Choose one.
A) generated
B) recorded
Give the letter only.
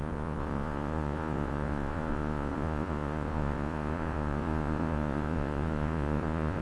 A